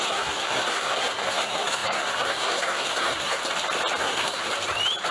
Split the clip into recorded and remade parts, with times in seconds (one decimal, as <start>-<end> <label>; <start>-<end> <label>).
0.0-3.4 remade; 3.4-4.0 recorded; 4.0-4.4 remade; 4.4-5.1 recorded